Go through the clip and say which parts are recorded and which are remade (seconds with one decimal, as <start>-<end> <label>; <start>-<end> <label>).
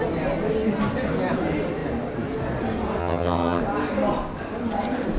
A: 0.0-3.0 recorded; 3.0-3.6 remade; 3.6-5.2 recorded